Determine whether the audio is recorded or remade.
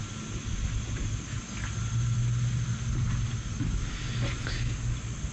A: recorded